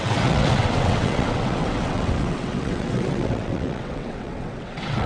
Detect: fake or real fake